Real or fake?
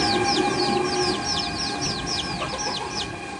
real